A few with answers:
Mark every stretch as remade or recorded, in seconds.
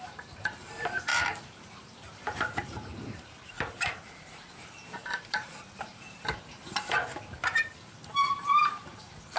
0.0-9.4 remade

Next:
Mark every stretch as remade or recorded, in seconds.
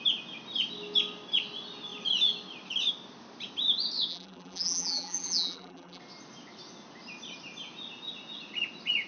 0.0-4.1 recorded; 4.1-6.0 remade; 6.0-9.1 recorded